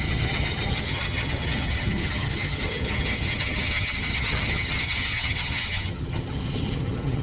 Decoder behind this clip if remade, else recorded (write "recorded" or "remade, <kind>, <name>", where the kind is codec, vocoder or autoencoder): remade, vocoder, HiFi-GAN